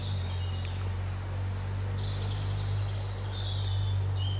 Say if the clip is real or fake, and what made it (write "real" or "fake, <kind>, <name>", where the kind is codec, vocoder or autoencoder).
real